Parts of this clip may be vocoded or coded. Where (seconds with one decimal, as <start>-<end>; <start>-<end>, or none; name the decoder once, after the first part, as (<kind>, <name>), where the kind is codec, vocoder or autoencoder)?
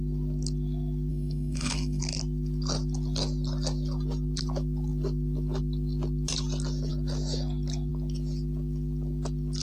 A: 1.1-2.0 (codec, SNAC)